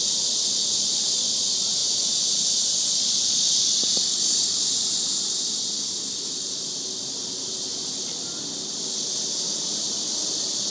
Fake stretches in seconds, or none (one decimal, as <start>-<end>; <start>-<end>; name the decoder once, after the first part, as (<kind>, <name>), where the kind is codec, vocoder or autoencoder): none

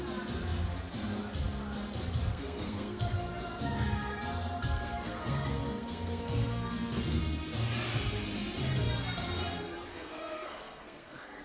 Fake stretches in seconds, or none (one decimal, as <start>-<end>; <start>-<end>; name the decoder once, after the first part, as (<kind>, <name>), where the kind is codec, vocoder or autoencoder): 2.3-3.3 (codec, SNAC); 4.6-7.2; 9.9-11.4

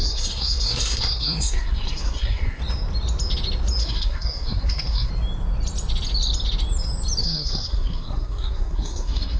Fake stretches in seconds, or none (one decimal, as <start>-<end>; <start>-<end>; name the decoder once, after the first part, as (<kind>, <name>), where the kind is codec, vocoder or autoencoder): 0.0-2.6 (codec, SNAC); 3.8-5.1; 7.2-9.4

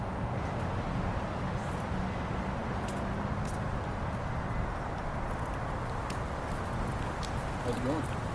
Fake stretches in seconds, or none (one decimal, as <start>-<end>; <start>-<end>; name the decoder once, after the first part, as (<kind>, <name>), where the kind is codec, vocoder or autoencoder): none